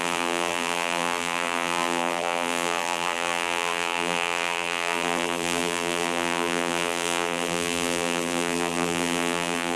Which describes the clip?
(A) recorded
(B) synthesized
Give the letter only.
B